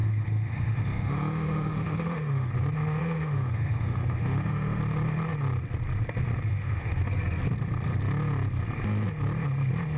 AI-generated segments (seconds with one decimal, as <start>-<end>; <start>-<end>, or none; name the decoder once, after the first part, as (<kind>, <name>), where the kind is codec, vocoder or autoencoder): 0.0-2.5 (autoencoder, DAC-VAE); 3.0-4.8; 6.5-7.0